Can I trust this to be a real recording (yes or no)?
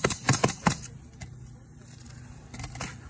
yes